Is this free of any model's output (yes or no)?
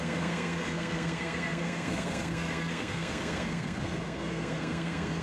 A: no